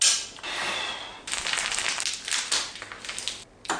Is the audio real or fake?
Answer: real